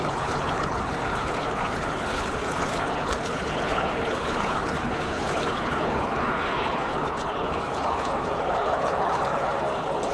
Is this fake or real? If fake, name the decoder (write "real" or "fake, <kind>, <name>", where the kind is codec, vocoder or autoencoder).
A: fake, codec, HILCodec